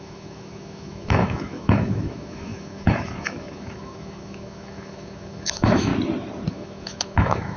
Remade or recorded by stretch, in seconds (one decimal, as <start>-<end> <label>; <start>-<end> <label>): 0.0-5.9 remade; 5.9-6.5 recorded; 6.5-7.6 remade